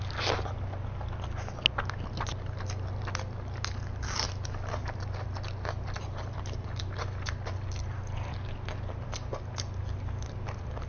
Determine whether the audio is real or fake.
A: real